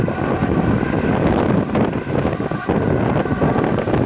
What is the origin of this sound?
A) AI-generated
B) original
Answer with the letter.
B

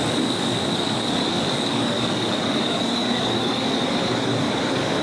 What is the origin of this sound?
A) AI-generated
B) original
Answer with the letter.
A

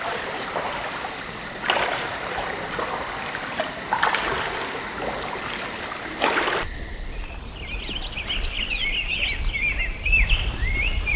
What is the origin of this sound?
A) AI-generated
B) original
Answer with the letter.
B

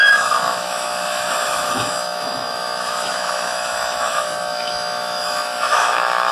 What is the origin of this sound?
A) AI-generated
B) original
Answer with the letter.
A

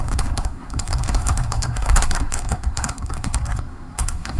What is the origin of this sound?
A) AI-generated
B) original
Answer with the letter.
A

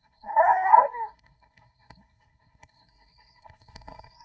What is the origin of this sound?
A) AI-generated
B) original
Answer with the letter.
A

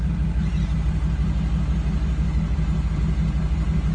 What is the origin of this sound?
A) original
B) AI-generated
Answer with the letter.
A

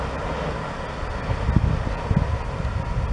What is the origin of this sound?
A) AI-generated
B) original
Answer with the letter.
B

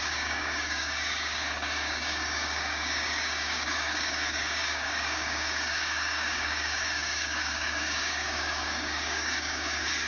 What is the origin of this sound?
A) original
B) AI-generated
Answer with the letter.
B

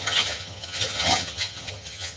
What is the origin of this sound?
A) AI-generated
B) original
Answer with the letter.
A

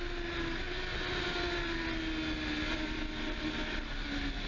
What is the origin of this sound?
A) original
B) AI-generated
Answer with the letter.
A